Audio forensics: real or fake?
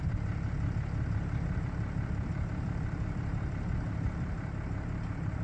fake